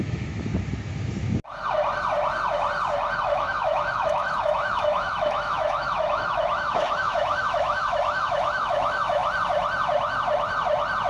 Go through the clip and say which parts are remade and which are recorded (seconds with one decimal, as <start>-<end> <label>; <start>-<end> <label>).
0.0-0.5 remade; 0.5-3.2 recorded; 3.2-9.2 remade; 9.2-11.1 recorded